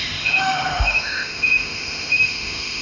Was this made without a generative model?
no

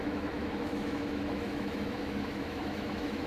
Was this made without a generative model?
no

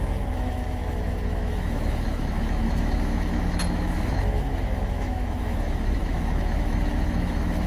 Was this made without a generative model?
no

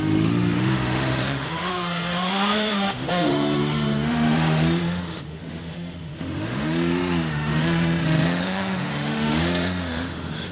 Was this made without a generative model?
no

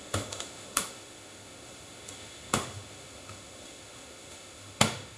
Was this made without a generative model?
no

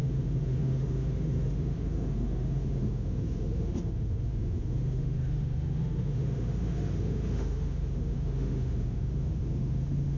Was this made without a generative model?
no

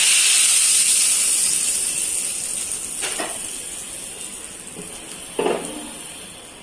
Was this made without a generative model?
yes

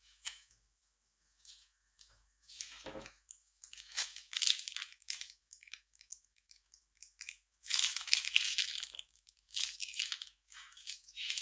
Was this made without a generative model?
no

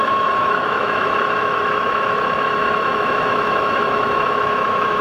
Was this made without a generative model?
no